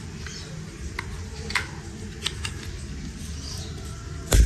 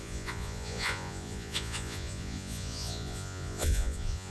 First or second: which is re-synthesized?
second